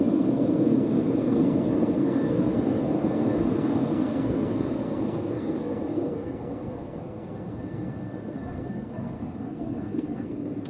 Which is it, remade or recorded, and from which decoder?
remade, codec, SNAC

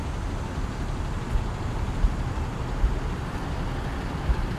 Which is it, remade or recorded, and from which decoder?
recorded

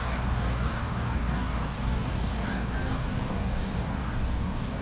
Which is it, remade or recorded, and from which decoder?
remade, codec, DAC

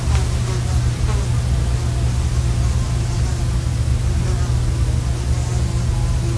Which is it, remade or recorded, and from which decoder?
recorded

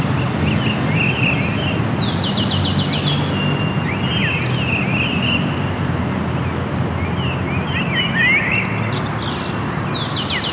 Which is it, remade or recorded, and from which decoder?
recorded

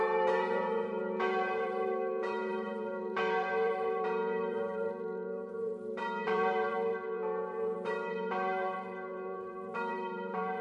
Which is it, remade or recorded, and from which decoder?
remade, vocoder, BigVGAN v2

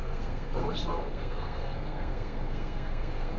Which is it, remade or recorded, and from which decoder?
remade, codec, SNAC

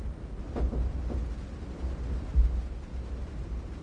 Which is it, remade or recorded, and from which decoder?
recorded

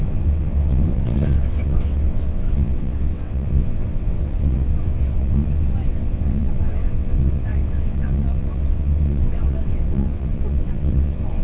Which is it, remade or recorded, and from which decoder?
remade, vocoder, WaveNeXt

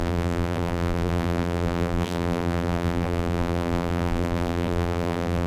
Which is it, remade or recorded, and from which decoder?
remade, vocoder, BigVGAN v2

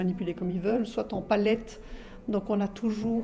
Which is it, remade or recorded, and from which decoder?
remade, vocoder, Vocos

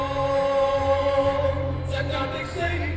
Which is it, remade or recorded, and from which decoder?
recorded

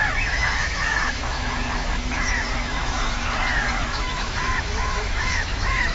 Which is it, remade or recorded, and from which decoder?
remade, autoencoder, DAC-VAE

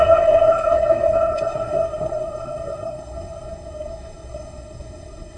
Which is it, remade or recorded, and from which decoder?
remade, codec, SNAC